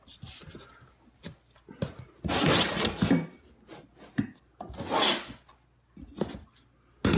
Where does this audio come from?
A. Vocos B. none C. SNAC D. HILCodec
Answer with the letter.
B